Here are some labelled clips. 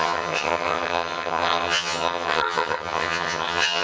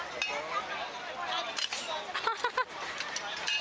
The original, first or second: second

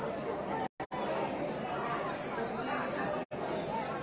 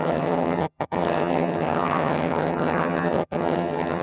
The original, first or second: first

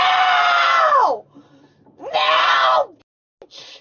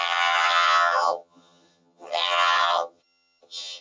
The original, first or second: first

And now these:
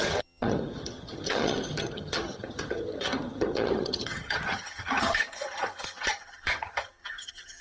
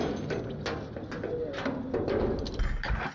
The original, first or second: second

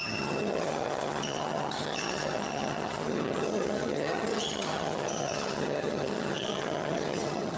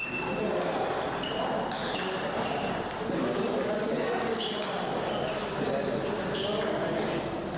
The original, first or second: second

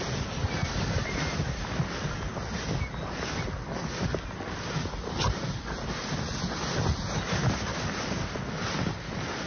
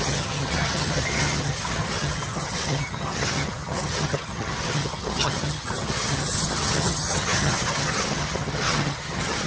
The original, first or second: first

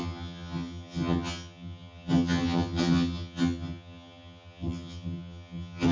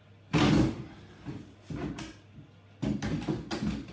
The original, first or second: second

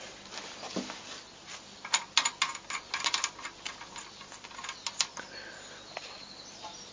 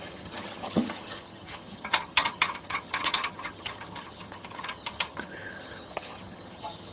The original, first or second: first